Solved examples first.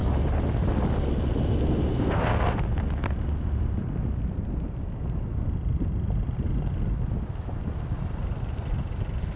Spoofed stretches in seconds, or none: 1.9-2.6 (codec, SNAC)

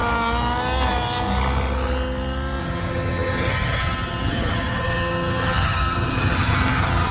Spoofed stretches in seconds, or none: 2.6-7.1 (vocoder, HiFi-GAN)

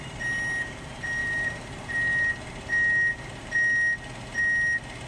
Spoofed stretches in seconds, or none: 1.2-2.5 (vocoder, BigVGAN v2)

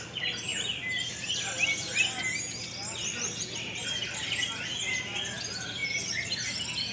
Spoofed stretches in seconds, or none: 5.8-6.3 (vocoder, BigVGAN v2)

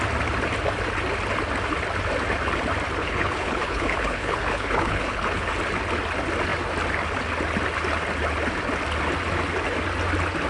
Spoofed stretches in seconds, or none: 3.0-5.5 (codec, HILCodec)